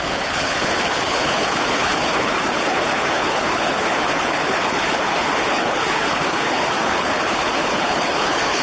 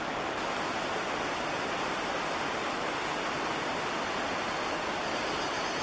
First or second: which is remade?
first